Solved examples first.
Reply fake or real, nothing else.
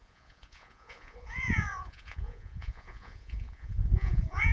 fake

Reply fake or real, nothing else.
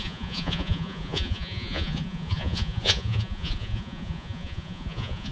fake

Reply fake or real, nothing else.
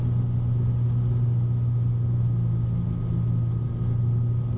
real